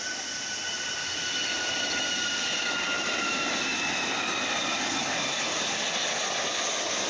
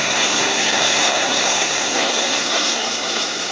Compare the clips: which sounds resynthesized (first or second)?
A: second